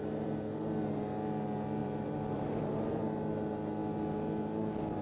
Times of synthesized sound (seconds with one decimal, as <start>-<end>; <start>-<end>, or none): 1.8-3.0